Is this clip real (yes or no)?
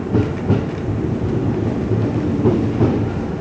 yes